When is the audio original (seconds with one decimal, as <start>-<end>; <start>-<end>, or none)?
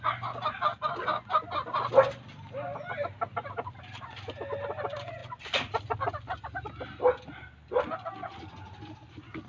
0.0-9.5